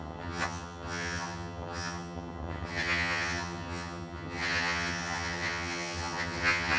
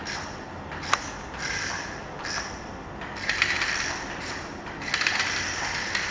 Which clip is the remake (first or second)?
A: first